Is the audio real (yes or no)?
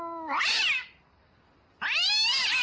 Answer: yes